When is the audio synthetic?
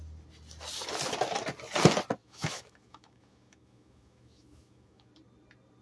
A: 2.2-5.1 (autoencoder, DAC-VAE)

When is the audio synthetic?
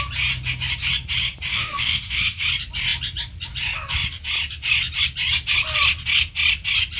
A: 1.5-2.4 (autoencoder, DAC-VAE)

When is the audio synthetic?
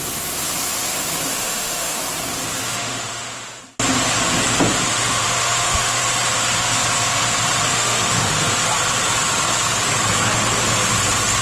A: 1.3-2.0 (autoencoder, DAC-VAE); 2.6-3.6; 4.9-6.0; 7.7-8.3